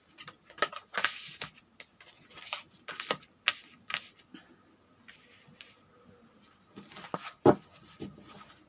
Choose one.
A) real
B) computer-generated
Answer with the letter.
A